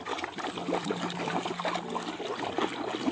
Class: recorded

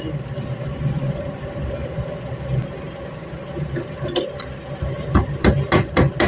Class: recorded